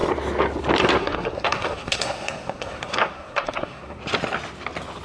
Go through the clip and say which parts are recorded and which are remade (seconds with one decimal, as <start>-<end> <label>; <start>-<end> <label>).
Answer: 0.0-1.0 recorded; 1.0-4.0 remade; 4.0-5.0 recorded